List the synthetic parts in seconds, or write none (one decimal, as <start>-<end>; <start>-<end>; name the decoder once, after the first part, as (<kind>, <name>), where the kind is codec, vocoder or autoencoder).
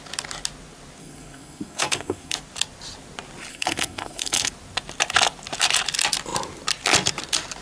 1.0-2.4 (codec, SNAC); 3.5-4.5